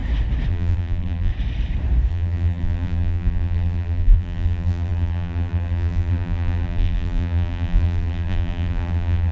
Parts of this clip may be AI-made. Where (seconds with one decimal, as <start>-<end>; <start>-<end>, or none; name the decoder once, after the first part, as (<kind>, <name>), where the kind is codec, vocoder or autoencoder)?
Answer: 0.5-1.3 (vocoder, BigVGAN v2); 2.1-9.3